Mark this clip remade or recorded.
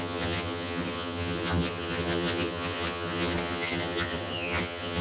remade